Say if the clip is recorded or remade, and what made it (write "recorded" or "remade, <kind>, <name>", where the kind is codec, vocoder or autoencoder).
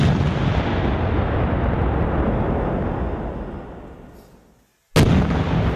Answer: recorded